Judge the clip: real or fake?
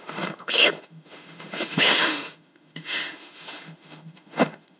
fake